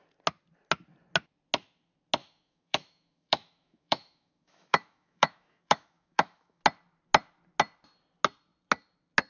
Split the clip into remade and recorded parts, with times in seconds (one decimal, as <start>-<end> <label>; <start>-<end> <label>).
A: 0.0-2.2 recorded; 2.2-6.6 remade; 6.6-9.3 recorded